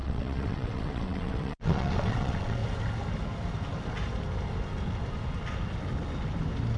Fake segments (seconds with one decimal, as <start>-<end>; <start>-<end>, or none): 0.0-2.6